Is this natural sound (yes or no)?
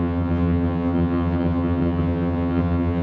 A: no